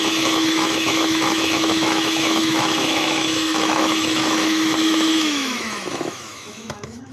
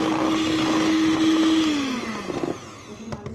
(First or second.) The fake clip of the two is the first